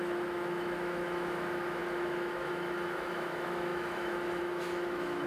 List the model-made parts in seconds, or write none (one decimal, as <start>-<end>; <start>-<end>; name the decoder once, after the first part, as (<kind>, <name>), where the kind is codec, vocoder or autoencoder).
0.0-5.3 (autoencoder, DAC-VAE)